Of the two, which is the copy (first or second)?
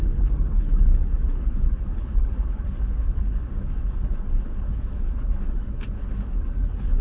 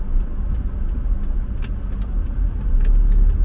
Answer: first